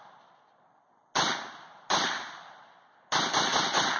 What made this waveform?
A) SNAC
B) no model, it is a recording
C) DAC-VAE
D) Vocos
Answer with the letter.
B